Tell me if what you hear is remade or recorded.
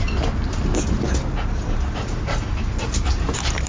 recorded